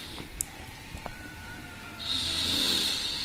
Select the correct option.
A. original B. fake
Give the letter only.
B